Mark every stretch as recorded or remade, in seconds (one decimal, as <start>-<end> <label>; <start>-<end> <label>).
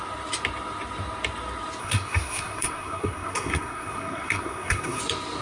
0.0-1.8 recorded; 1.8-5.0 remade; 5.0-5.4 recorded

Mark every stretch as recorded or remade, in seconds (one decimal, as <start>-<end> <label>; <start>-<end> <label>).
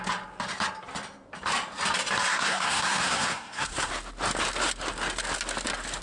0.0-2.3 recorded; 2.3-3.9 remade; 3.9-6.0 recorded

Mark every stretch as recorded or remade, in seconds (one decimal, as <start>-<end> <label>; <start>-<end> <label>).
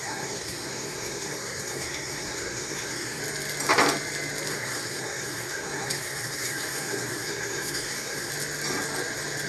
0.0-3.2 remade; 3.2-4.5 recorded; 4.5-8.3 remade; 8.3-9.5 recorded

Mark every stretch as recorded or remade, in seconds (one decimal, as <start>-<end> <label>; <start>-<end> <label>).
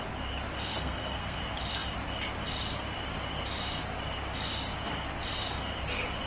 0.0-0.7 recorded; 0.7-1.4 remade; 1.4-6.3 recorded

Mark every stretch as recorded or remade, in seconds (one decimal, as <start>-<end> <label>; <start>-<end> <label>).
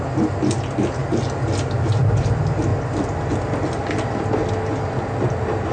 0.0-5.7 recorded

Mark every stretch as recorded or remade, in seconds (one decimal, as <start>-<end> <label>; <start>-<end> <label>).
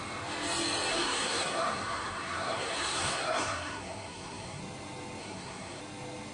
0.0-0.9 recorded; 0.9-4.6 remade; 4.6-5.2 recorded; 5.2-5.8 remade; 5.8-6.3 recorded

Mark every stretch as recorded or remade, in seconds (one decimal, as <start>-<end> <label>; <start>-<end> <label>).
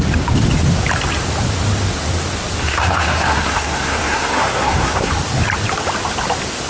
0.0-2.6 recorded; 2.6-5.1 remade; 5.1-6.7 recorded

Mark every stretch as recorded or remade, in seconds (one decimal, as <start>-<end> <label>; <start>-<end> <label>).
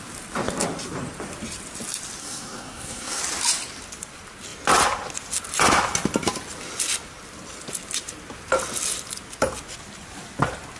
0.0-2.2 recorded; 2.2-3.2 remade; 3.2-10.8 recorded